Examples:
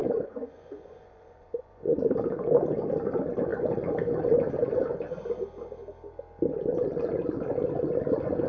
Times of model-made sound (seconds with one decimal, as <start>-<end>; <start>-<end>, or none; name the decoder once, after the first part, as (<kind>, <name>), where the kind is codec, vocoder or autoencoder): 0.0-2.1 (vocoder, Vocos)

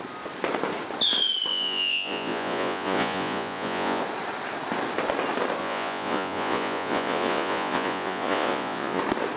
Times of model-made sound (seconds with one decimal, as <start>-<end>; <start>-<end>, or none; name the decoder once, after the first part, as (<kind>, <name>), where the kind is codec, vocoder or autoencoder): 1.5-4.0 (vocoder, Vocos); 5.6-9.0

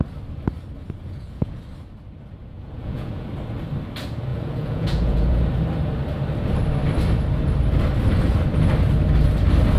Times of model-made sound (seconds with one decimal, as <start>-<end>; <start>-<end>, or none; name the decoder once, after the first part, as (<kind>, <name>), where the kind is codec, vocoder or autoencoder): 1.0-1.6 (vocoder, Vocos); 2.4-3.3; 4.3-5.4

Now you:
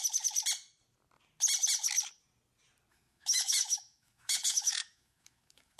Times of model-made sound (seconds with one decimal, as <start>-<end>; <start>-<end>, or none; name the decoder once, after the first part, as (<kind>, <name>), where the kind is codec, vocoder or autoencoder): 2.9-5.8 (autoencoder, DAC-VAE)

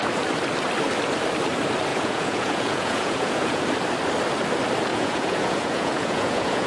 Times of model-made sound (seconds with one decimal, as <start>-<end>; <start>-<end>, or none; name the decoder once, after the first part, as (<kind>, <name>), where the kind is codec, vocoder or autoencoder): 1.9-3.6 (vocoder, Vocos); 4.9-6.7